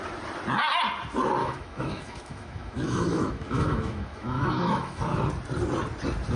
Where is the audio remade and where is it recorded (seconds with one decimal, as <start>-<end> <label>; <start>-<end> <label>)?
0.0-1.4 recorded; 1.4-5.0 remade; 5.0-6.4 recorded